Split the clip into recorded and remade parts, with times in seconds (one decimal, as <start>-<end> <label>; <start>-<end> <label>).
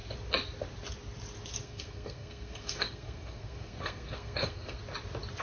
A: 0.0-1.6 recorded; 1.6-4.8 remade; 4.8-5.4 recorded